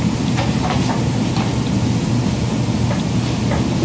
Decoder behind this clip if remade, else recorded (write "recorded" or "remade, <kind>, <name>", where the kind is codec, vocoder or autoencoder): recorded